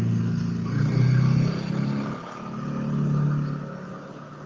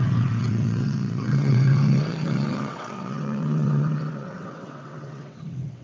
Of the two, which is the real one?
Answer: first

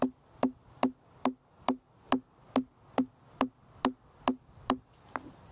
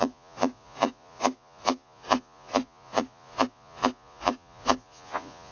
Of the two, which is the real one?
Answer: first